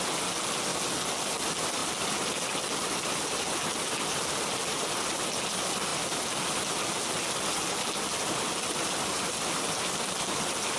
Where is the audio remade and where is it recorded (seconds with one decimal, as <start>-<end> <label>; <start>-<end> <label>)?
0.0-10.8 recorded